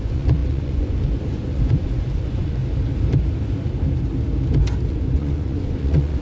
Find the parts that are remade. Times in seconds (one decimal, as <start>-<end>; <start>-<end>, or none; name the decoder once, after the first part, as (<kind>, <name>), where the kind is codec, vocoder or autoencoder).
0.0-2.6 (vocoder, Vocos); 4.9-6.2